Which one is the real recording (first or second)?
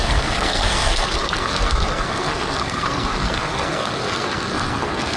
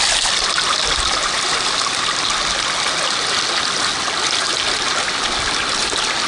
second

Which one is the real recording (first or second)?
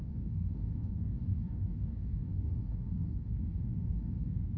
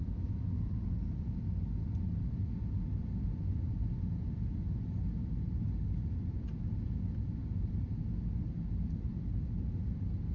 second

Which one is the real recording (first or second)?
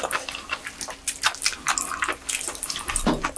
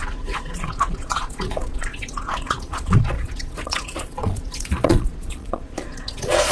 first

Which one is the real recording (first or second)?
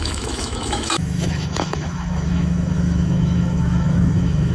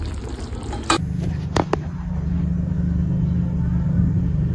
second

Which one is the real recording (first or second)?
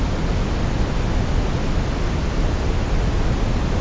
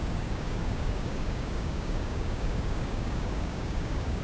first